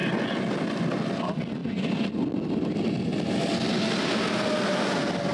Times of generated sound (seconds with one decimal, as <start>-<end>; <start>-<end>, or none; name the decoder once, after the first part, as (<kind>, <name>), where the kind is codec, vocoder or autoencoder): none